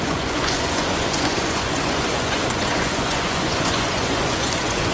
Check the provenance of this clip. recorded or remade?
remade